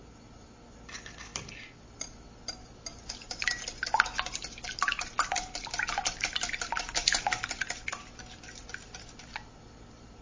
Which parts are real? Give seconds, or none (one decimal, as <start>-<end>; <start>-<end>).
0.0-10.2